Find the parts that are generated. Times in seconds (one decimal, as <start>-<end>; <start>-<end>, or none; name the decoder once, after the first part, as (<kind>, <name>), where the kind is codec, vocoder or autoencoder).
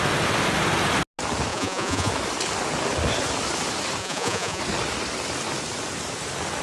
1.5-2.1 (vocoder, Vocos); 4.0-4.6